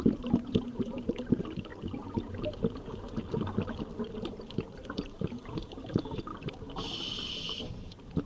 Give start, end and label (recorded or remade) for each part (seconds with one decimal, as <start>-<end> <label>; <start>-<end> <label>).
0.0-1.7 remade; 1.7-4.3 recorded; 4.3-6.3 remade; 6.3-7.3 recorded; 7.3-8.3 remade